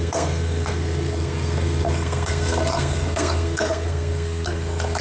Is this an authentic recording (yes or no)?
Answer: no